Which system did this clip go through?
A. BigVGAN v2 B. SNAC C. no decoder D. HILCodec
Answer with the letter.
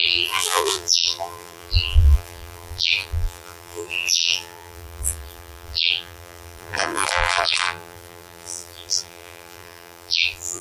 A